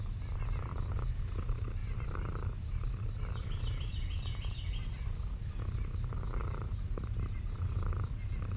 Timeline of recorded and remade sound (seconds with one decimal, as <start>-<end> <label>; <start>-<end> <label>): 0.0-8.6 recorded